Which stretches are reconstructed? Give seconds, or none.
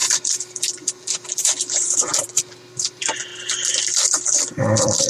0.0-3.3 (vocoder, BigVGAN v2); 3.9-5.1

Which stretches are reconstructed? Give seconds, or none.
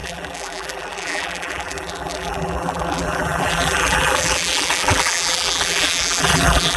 0.0-6.8 (vocoder, BigVGAN v2)